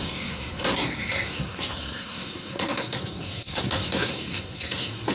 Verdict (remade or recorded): remade